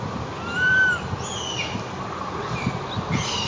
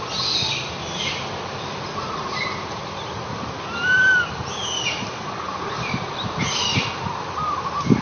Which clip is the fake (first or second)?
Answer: second